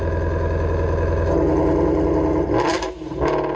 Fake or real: real